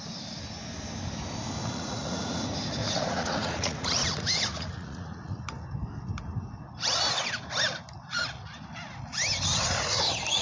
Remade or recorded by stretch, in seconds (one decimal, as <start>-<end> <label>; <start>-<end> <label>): 0.0-1.6 recorded; 1.6-2.4 remade; 2.4-2.8 recorded; 2.8-5.4 remade; 5.4-10.4 recorded